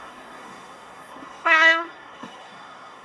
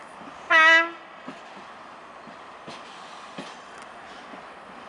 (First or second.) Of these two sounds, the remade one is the first